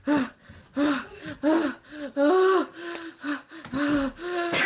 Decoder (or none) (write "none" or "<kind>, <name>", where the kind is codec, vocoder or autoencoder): none